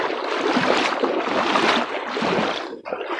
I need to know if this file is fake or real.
real